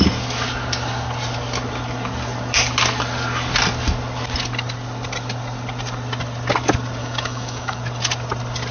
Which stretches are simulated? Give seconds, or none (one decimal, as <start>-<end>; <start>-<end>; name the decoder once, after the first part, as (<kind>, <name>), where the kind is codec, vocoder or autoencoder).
7.0-7.8 (autoencoder, DAC-VAE)